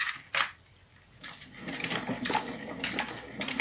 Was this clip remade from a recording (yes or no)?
no